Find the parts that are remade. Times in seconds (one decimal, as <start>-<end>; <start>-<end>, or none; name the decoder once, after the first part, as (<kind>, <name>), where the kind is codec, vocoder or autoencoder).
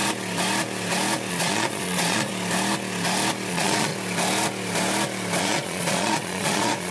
1.3-2.3 (vocoder, Vocos); 3.5-3.9; 5.4-6.9